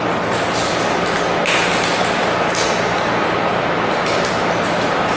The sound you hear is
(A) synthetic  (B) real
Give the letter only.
B